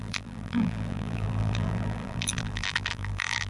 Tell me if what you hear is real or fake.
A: fake